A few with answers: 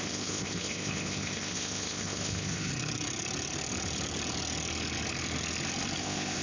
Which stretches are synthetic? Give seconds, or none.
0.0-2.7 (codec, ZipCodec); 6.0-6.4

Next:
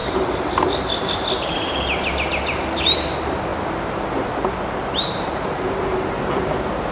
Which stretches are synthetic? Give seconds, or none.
0.0-3.1 (vocoder, BigVGAN v2); 3.5-5.3

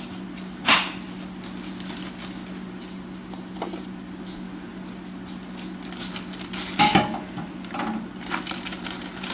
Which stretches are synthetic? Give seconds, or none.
none

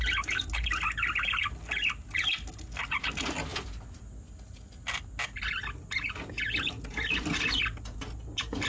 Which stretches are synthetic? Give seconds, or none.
none

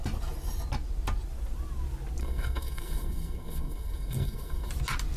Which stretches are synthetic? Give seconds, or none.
2.2-4.7 (codec, SNAC)

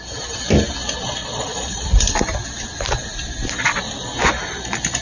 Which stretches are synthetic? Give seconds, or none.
1.2-1.9 (vocoder, Vocos)